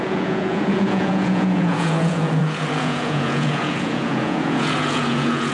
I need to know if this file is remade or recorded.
remade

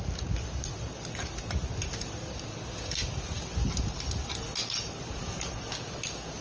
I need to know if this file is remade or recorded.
recorded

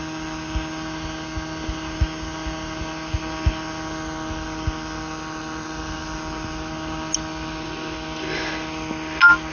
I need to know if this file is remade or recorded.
recorded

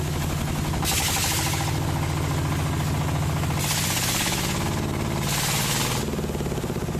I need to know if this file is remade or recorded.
recorded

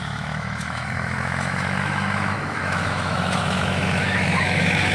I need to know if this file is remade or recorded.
remade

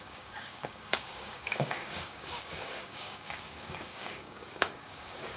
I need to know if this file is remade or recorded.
remade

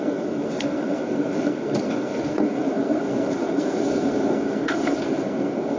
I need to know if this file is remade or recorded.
remade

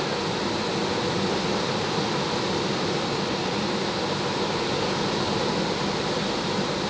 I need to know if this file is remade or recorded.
recorded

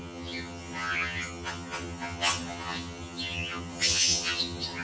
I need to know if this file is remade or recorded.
remade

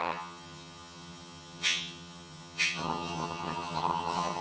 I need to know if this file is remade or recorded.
remade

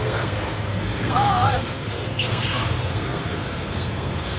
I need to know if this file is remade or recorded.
remade